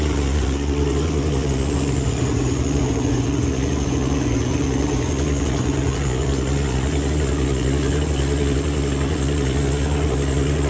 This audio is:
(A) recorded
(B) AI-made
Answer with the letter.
B